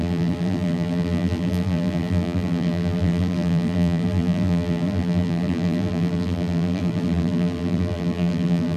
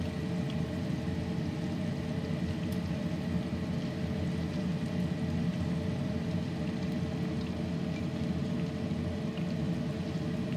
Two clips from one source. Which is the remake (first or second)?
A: first